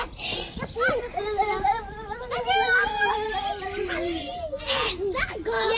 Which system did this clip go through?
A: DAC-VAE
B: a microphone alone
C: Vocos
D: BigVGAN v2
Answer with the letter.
B